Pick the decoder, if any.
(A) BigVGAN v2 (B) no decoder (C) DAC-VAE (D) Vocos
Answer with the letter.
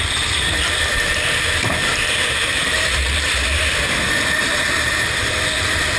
A